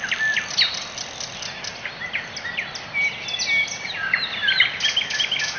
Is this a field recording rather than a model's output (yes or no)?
yes